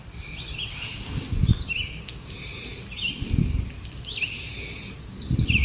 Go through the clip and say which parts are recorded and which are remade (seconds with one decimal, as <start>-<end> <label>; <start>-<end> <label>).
0.0-5.6 recorded